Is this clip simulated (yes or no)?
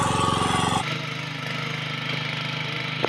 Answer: no